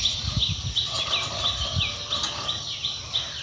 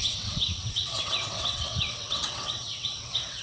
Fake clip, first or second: second